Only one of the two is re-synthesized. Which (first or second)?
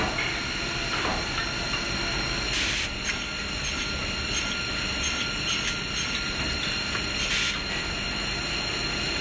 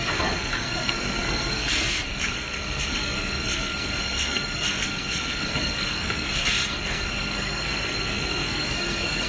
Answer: second